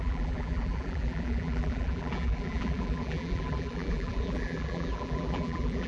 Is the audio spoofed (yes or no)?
yes